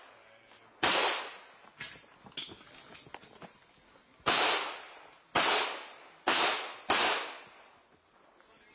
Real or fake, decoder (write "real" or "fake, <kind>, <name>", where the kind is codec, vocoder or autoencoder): real